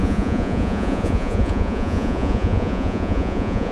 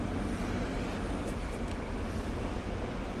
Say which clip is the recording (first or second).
second